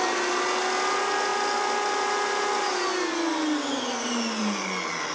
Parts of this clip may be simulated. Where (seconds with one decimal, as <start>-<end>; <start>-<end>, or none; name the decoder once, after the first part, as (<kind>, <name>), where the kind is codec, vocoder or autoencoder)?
none